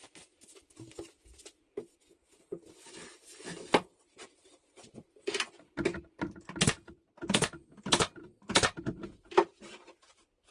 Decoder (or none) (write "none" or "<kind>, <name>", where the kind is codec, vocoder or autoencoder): none